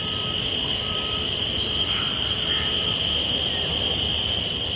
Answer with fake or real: real